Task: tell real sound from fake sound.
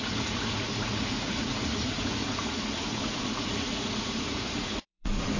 fake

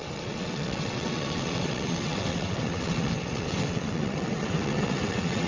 fake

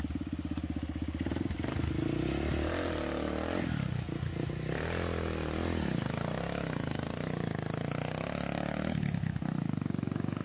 real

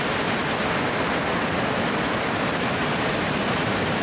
real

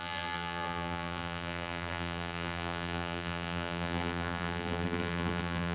fake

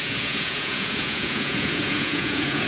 fake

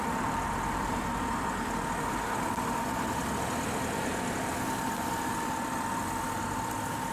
real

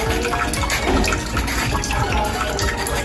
real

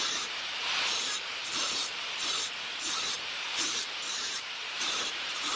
fake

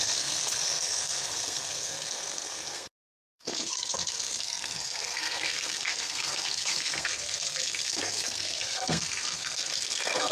fake